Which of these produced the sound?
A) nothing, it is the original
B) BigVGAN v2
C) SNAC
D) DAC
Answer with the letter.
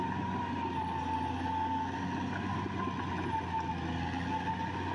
A